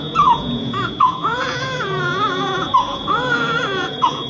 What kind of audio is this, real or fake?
fake